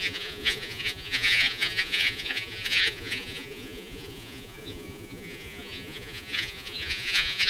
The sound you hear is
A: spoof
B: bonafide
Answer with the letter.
A